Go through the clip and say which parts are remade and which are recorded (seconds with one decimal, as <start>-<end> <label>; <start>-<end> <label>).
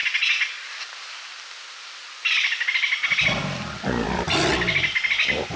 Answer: 0.0-5.6 recorded